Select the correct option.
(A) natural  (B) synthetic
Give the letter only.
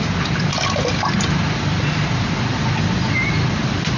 A